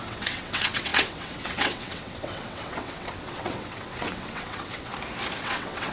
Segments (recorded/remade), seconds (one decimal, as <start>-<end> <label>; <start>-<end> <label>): 0.0-4.9 remade; 4.9-5.4 recorded; 5.4-5.9 remade